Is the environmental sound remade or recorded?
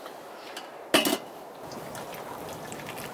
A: recorded